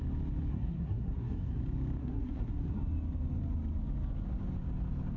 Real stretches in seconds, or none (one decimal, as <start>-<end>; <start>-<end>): 0.0-0.5; 1.6-2.0; 2.8-5.2